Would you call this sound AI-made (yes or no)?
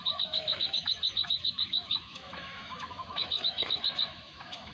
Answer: yes